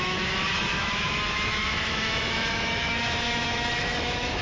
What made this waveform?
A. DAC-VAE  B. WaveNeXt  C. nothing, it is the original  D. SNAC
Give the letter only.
A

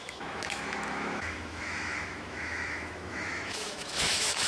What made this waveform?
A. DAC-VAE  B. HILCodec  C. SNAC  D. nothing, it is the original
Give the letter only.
A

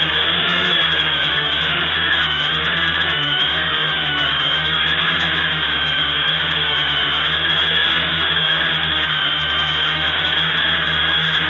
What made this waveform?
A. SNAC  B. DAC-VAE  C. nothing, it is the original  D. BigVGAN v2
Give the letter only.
B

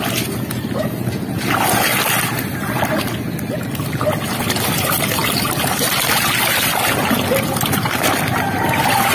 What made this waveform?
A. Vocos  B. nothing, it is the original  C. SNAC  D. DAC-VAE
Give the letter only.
B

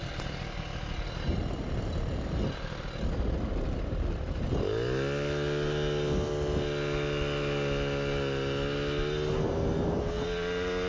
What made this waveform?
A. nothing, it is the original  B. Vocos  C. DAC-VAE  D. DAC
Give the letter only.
A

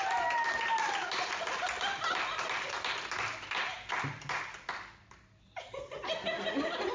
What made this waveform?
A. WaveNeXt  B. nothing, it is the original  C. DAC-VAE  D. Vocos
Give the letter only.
B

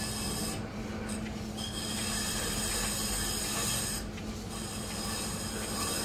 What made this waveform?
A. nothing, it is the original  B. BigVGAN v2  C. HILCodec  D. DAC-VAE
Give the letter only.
A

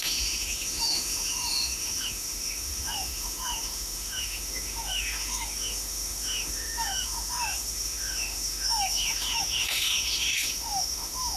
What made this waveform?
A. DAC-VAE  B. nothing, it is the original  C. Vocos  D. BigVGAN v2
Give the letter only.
A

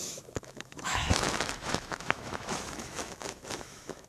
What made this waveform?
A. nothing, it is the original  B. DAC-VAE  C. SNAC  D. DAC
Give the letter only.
B